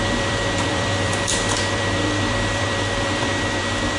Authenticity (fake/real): fake